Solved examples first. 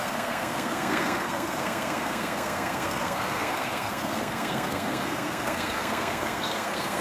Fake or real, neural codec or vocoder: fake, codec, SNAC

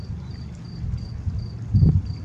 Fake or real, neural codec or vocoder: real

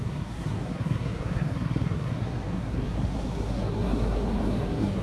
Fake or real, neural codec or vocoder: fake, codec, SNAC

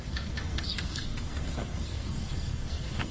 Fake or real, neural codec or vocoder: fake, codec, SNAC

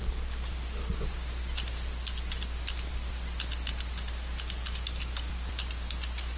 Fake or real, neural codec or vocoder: real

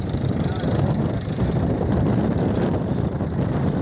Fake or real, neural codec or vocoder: real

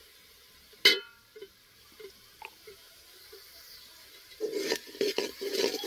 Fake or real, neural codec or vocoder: real